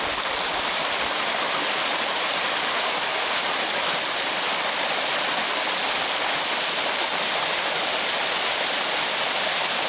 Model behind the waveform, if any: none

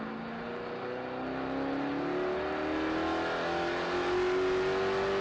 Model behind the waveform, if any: none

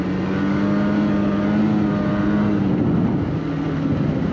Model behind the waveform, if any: none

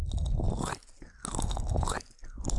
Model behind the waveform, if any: none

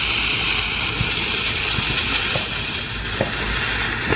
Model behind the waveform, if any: none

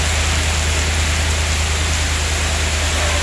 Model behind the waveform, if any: none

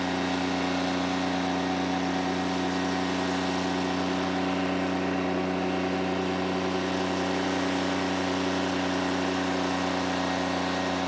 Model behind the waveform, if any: none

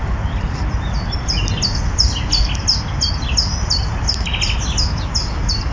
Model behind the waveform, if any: none